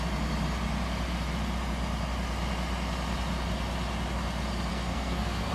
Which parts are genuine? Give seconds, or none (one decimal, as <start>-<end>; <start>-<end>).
0.0-4.7